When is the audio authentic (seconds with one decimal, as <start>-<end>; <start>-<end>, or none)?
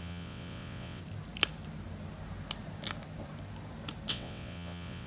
1.0-4.1